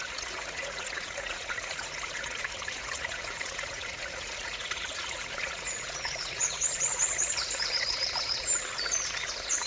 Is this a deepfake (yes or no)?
yes